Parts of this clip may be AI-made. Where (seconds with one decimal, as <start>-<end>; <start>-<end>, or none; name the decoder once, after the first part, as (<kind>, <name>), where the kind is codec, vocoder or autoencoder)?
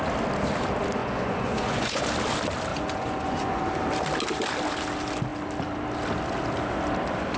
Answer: 1.0-2.0 (vocoder, Vocos); 2.7-3.6